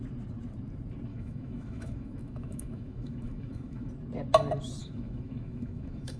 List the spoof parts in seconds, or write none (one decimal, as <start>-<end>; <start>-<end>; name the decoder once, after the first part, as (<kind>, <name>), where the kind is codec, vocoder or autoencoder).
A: 1.1-3.9 (autoencoder, DAC-VAE); 4.8-6.2